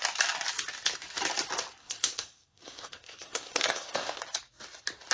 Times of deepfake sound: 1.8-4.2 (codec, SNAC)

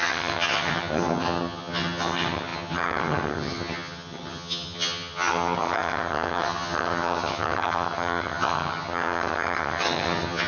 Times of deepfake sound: 0.0-10.5 (vocoder, HiFi-GAN)

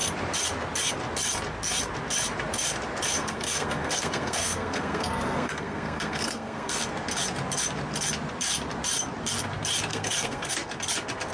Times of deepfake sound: 3.2-6.8 (codec, SNAC); 9.9-10.5

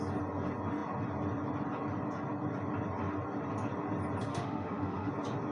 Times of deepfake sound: 4.3-5.1 (autoencoder, DAC-VAE)